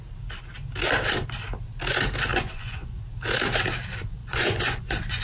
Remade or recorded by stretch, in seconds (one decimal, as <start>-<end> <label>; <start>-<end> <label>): 0.0-2.3 recorded; 2.3-3.0 remade; 3.0-4.2 recorded; 4.2-5.2 remade